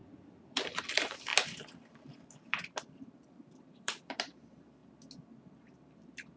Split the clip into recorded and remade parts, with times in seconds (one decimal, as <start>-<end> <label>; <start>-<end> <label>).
0.0-1.3 remade; 1.3-2.9 recorded; 2.9-4.8 remade; 4.8-5.6 recorded; 5.6-6.4 remade